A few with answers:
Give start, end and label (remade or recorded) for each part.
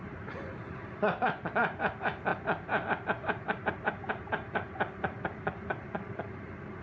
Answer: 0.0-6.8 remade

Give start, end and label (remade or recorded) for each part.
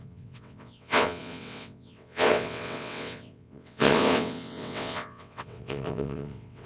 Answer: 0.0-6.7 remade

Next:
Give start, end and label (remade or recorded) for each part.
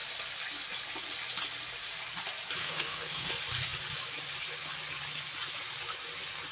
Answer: 0.0-2.6 recorded; 2.6-3.3 remade; 3.3-6.5 recorded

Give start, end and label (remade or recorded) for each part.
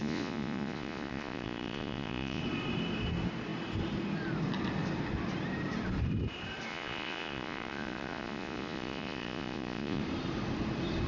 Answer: 0.0-2.4 remade; 2.4-6.7 recorded; 6.7-10.0 remade; 10.0-11.1 recorded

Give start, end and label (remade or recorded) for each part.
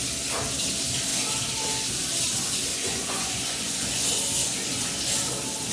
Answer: 0.0-2.7 recorded; 2.7-4.7 remade; 4.7-5.7 recorded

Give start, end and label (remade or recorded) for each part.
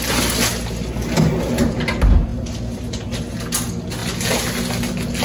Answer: 0.0-2.3 recorded; 2.3-2.9 remade; 2.9-5.2 recorded